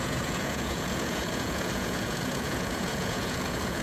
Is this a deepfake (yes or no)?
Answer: yes